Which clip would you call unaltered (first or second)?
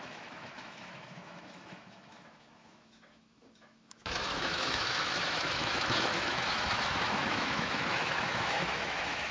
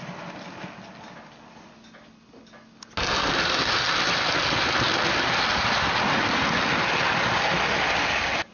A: second